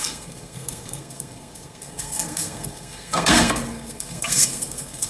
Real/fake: fake